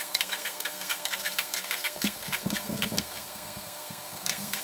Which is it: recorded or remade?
remade